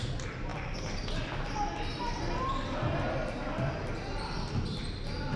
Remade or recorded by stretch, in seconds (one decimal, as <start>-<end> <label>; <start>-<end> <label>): 0.0-5.4 recorded